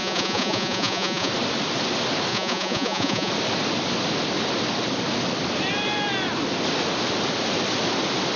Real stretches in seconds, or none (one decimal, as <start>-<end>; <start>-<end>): 1.3-2.3; 3.3-8.4